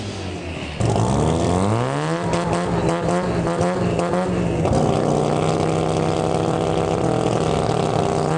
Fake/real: real